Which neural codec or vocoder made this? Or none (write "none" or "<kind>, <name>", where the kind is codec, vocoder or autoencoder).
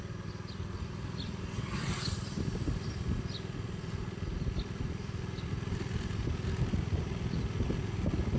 none